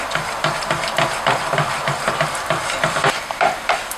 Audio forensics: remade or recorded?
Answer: remade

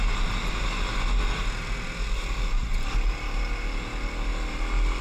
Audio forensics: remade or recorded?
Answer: recorded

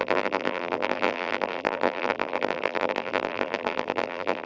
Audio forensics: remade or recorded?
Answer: remade